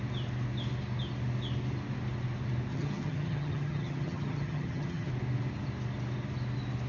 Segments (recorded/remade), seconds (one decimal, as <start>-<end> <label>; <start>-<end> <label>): 0.0-2.7 recorded; 2.7-5.1 remade; 5.1-6.9 recorded